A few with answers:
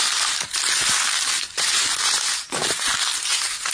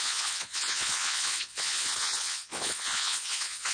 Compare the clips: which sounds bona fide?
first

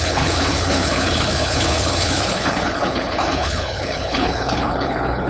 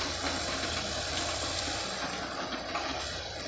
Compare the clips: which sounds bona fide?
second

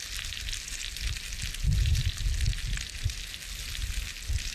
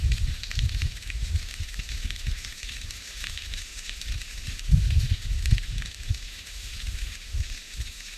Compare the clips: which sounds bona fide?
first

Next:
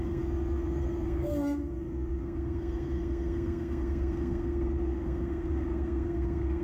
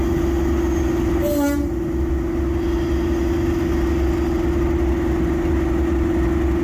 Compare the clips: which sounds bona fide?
second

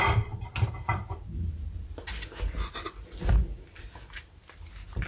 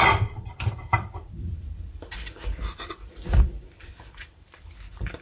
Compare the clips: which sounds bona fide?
first